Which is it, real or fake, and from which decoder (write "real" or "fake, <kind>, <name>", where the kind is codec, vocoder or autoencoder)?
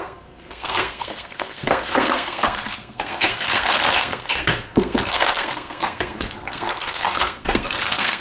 fake, codec, SNAC